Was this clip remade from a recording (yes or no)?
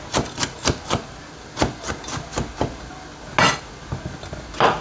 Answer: no